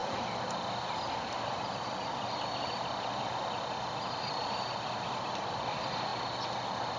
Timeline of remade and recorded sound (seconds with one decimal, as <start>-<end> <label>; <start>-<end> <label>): 0.0-7.0 recorded